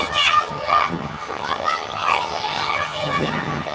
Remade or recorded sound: remade